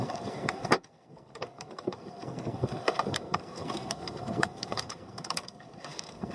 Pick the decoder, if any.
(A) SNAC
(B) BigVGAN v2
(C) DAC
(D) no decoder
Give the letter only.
A